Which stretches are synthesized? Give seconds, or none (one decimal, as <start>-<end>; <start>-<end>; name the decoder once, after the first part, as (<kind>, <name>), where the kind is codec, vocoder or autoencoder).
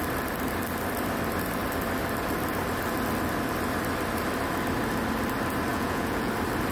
5.7-6.3 (vocoder, Vocos)